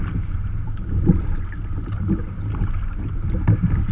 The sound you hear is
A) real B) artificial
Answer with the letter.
A